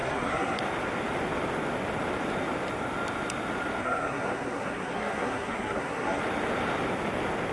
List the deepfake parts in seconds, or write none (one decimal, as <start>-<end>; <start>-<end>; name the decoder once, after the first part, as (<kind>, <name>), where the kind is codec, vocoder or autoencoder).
0.0-0.6 (codec, SNAC); 3.8-6.2